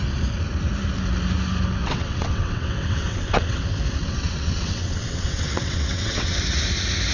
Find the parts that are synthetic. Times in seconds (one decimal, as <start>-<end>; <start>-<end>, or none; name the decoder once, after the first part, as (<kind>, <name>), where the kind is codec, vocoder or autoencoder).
1.8-3.6 (vocoder, WaveNeXt); 4.0-6.4